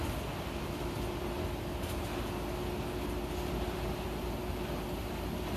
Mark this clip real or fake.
real